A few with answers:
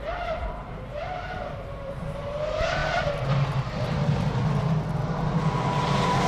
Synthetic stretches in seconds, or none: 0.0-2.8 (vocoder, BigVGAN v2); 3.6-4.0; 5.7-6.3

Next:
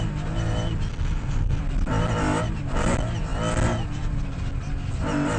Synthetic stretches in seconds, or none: 0.9-1.6 (codec, SNAC)

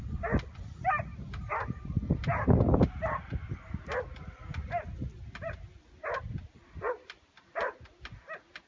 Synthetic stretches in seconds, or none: none

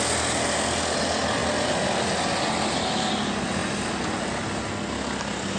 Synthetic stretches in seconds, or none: none

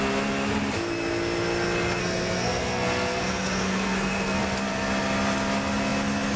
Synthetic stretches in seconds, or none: 2.0-4.4 (codec, SNAC)